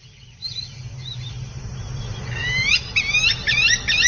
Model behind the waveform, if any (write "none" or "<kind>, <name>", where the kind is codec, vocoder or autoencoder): none